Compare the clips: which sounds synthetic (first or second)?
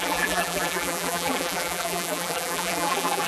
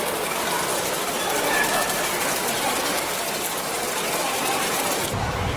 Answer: first